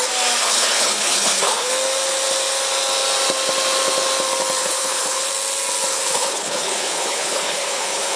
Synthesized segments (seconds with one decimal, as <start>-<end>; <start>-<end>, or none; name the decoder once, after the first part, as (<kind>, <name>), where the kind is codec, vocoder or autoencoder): 0.4-1.7 (codec, HILCodec); 4.6-5.3; 5.9-8.2